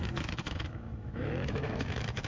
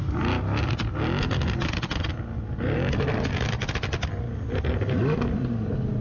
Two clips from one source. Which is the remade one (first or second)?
first